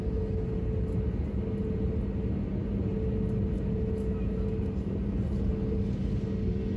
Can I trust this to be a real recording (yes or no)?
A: yes